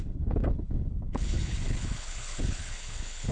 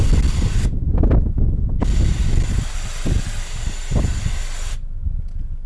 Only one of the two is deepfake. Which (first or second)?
first